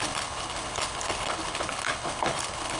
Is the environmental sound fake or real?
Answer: fake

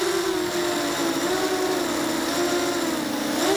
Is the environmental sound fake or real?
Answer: real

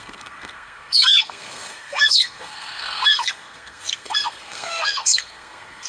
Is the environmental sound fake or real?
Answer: fake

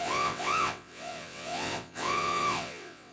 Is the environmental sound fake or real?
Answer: fake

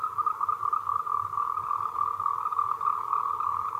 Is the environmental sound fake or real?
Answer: fake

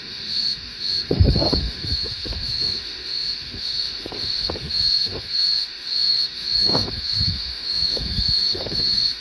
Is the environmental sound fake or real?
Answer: fake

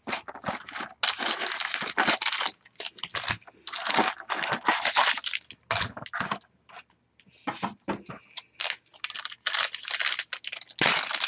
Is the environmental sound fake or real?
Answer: real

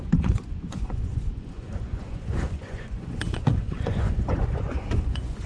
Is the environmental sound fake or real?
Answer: fake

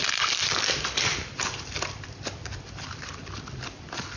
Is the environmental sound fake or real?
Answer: fake